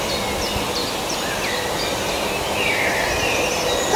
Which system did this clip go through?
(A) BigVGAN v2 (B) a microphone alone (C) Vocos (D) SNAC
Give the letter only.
B